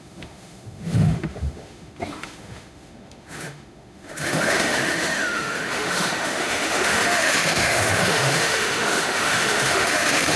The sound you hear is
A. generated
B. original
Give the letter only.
A